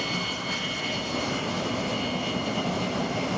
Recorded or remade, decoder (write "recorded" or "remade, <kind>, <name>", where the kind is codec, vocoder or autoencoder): recorded